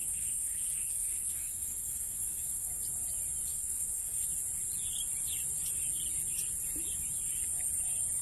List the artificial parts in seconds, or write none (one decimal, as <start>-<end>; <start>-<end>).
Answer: 0.0-2.7; 3.5-4.4